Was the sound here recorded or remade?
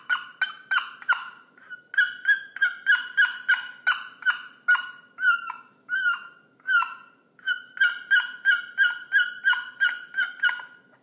recorded